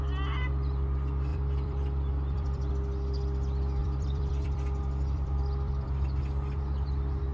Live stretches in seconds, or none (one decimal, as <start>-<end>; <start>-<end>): 0.0-1.3; 2.7-3.8; 6.2-7.3